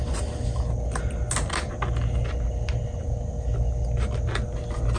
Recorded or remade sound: recorded